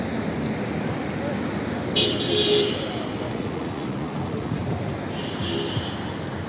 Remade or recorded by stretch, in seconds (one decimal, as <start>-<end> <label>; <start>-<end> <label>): 0.0-3.3 recorded; 3.3-4.6 remade; 4.6-6.5 recorded